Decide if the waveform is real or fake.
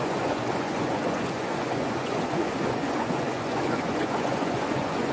fake